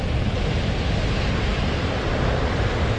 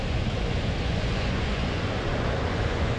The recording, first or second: first